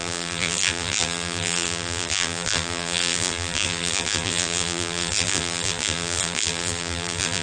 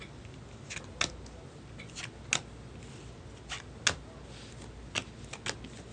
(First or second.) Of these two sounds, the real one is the second